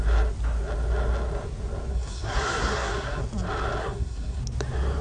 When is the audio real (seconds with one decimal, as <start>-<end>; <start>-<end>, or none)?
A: 0.0-1.9; 3.2-3.8; 4.4-5.0